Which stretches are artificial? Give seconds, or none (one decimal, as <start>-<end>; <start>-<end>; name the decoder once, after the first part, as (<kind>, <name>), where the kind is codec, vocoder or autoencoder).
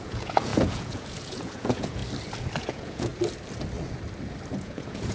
0.0-2.0 (vocoder, Vocos); 2.6-3.1; 4.6-5.1